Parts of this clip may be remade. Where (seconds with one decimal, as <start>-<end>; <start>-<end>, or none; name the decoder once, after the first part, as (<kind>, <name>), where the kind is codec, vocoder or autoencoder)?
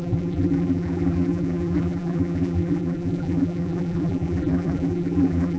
0.0-5.6 (vocoder, BigVGAN v2)